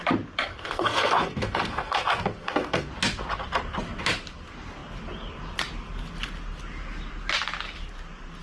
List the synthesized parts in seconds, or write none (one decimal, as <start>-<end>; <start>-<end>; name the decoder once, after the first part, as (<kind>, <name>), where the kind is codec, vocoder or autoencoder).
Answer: 0.5-2.9 (codec, SNAC)